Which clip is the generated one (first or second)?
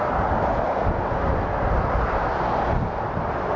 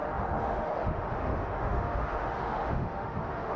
second